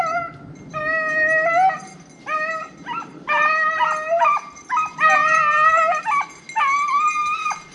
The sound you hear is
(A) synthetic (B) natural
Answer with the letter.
B